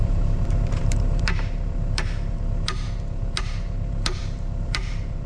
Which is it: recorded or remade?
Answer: remade